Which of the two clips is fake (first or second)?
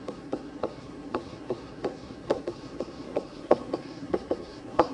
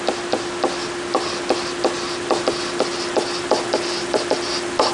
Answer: first